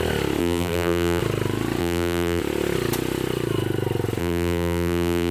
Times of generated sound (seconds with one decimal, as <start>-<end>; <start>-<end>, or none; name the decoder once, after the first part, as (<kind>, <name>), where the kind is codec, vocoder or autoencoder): 0.4-1.2 (vocoder, BigVGAN v2); 1.8-2.4; 4.2-5.3

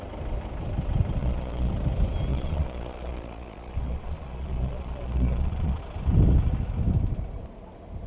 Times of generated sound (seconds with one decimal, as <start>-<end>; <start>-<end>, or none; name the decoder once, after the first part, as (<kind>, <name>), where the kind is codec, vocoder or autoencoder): 1.2-1.7 (vocoder, Vocos); 2.3-5.8

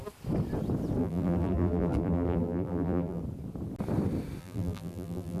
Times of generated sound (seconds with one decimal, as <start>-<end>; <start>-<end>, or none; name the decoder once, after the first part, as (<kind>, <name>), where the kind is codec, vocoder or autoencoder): 1.0-3.2 (vocoder, BigVGAN v2); 4.4-5.4

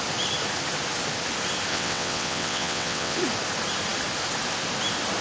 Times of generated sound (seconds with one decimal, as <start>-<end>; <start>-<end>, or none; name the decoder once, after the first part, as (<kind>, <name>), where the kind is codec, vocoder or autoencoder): 1.7-3.2 (vocoder, WaveNeXt)

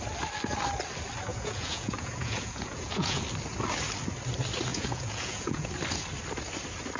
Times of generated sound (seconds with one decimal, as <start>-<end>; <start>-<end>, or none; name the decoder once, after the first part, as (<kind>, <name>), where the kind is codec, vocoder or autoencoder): 1.3-3.2 (vocoder, Vocos); 4.7-5.7

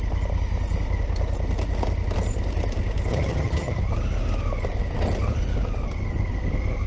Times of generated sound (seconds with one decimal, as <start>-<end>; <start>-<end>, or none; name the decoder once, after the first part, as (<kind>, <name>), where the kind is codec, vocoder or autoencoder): 3.1-3.8 (vocoder, HiFi-GAN)

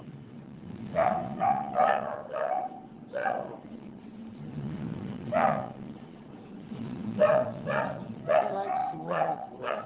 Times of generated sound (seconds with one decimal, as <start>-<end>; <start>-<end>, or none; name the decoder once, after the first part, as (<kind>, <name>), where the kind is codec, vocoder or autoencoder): 0.0-9.9 (vocoder, WaveNeXt)

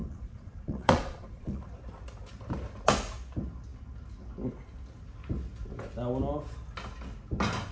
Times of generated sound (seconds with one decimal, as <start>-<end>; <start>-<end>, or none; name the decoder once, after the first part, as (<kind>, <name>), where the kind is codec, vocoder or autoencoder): 0.0-1.6 (vocoder, Vocos)